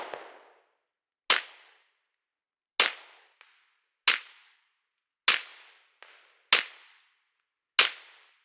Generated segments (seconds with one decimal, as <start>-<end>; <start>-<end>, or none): none